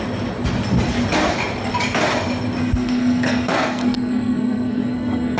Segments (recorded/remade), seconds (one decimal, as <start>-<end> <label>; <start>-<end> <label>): 0.0-2.6 recorded; 2.6-5.4 remade